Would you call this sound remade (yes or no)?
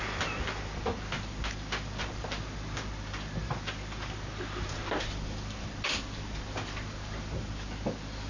no